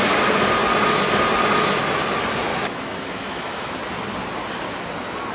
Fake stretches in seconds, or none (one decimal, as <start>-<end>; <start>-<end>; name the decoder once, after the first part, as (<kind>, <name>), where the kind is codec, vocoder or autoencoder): 2.5-3.7 (autoencoder, DAC-VAE)